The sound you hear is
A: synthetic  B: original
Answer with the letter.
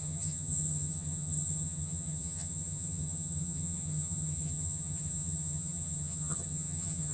A